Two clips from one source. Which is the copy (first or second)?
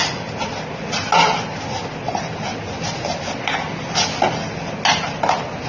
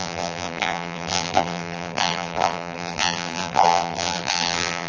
second